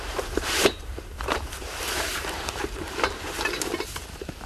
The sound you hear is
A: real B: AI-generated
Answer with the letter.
B